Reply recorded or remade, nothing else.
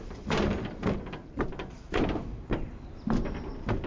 remade